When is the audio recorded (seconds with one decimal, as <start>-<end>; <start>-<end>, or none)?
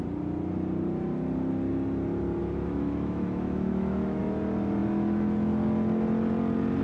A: 0.0-2.4; 4.2-6.8